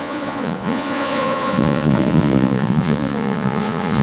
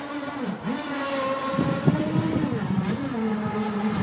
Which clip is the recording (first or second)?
second